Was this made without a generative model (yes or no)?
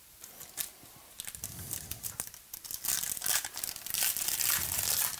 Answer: yes